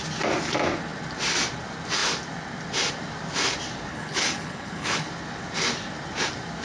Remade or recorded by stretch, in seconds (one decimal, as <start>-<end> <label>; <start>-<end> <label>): 0.0-3.9 recorded; 3.9-5.1 remade; 5.1-6.6 recorded